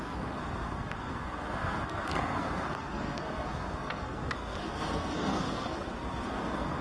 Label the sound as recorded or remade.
remade